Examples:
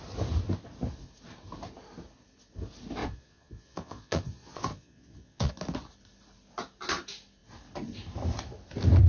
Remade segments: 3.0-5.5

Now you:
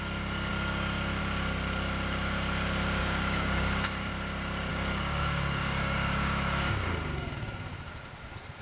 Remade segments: 3.0-4.1; 4.7-7.6